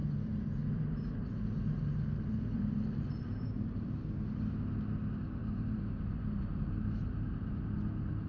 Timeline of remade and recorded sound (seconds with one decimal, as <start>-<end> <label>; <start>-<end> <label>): 0.0-3.9 remade; 3.9-5.4 recorded; 5.4-7.5 remade; 7.5-8.3 recorded